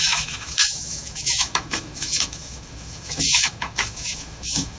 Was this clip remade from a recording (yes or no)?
yes